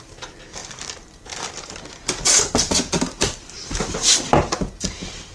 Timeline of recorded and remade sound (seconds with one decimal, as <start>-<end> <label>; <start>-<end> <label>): 0.0-0.6 recorded; 0.6-1.8 remade; 1.8-3.2 recorded; 3.2-4.1 remade; 4.1-5.3 recorded